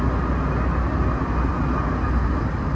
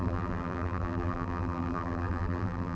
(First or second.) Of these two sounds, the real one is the first